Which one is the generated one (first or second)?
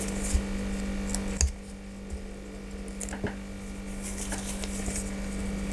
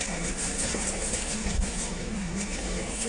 second